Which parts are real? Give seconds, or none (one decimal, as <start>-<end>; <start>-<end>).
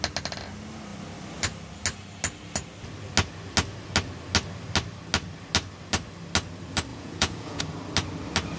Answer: 0.0-6.9; 7.6-8.6